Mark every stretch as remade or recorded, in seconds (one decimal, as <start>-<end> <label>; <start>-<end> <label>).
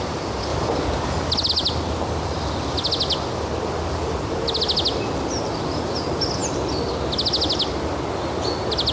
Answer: 0.0-8.9 recorded